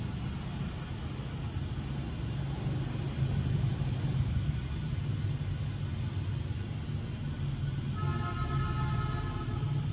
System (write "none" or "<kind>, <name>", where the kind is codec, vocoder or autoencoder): none